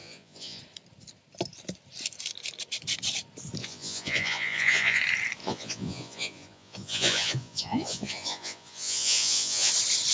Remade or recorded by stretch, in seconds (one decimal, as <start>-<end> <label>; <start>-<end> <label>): 0.0-0.6 remade; 0.6-3.6 recorded; 3.6-5.0 remade; 5.0-5.4 recorded; 5.4-9.7 remade; 9.7-10.1 recorded